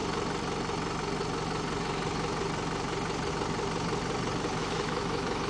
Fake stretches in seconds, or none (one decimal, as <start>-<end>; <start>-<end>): 4.6-5.5